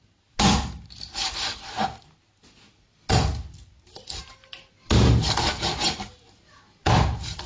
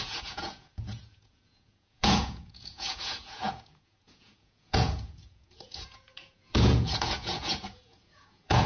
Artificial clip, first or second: second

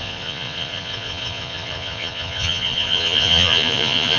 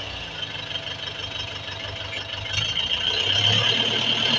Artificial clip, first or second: first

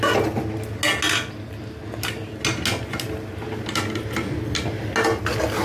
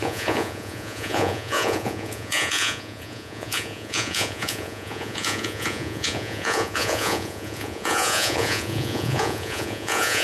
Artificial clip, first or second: second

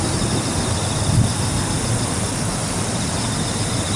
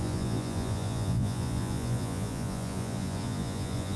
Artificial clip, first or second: second